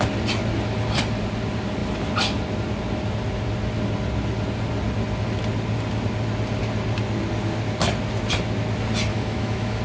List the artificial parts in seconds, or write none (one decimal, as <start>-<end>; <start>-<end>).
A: 9.1-9.8